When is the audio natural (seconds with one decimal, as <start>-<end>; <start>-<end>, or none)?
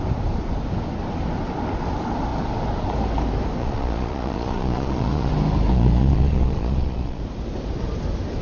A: 0.0-3.6; 5.3-5.7; 7.2-8.4